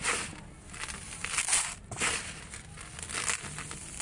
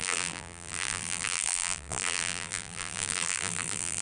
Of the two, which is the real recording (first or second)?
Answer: first